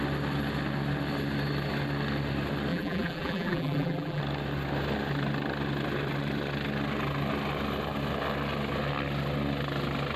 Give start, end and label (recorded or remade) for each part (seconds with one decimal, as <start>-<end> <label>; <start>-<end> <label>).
0.0-2.7 recorded; 2.7-4.2 remade; 4.2-10.2 recorded